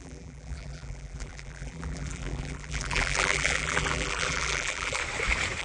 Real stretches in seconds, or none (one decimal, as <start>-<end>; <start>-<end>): 5.0-5.6